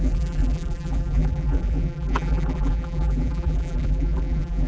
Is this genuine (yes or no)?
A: no